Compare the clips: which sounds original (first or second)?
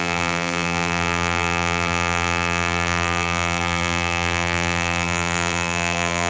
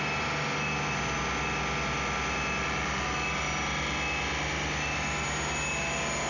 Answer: second